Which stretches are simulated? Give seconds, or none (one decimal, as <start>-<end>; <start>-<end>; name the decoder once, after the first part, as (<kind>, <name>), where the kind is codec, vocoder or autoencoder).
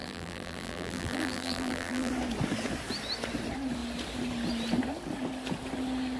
0.0-2.1 (vocoder, BigVGAN v2)